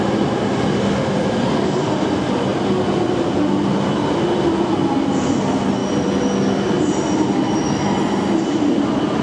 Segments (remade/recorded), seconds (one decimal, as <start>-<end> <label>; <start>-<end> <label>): 0.0-9.2 recorded